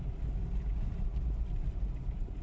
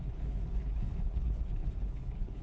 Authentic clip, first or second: first